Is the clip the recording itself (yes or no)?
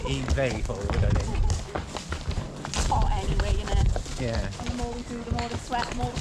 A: yes